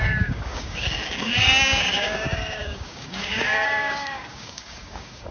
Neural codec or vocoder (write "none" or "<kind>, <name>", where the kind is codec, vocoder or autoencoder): codec, DAC